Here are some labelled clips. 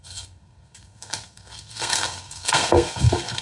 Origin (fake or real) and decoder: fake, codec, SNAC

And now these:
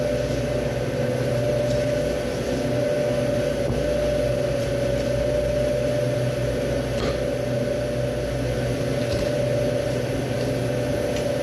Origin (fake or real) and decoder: real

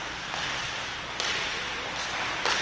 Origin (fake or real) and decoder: real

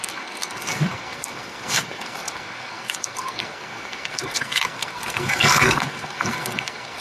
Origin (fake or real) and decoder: fake, codec, SNAC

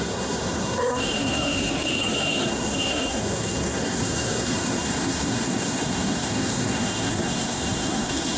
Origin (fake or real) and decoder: fake, codec, SNAC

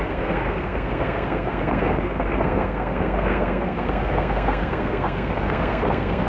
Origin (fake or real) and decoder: fake, codec, SNAC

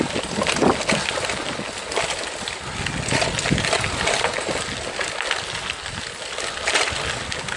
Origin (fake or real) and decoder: real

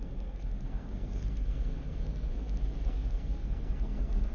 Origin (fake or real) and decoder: fake, codec, SNAC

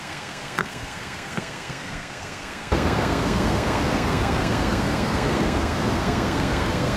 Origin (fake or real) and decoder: fake, codec, SNAC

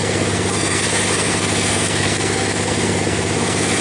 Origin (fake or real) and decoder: fake, codec, SNAC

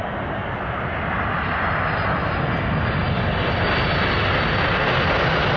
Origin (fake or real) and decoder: real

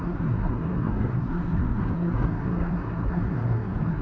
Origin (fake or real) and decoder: fake, codec, SNAC